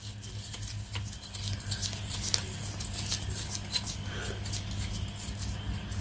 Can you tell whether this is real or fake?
real